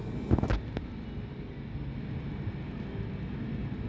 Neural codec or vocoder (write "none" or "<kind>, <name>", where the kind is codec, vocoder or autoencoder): none